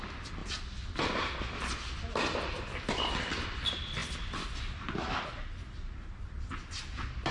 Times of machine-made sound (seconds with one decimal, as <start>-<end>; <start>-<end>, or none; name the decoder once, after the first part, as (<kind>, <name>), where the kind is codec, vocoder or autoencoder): none